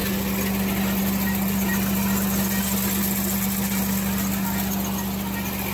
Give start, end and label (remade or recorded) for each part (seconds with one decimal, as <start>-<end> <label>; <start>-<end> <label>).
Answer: 0.0-5.7 recorded